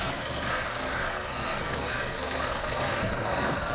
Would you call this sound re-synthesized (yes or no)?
yes